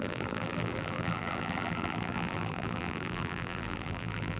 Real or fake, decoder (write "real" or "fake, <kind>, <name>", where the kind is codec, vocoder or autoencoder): fake, vocoder, BigVGAN v2